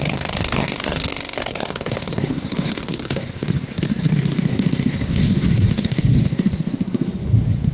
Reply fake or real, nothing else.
fake